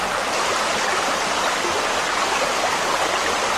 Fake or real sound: real